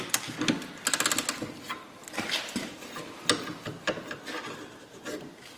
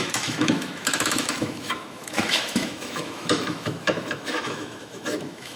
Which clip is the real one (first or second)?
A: first